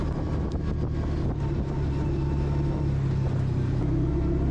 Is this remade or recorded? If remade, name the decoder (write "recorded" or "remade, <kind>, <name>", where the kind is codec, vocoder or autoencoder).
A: recorded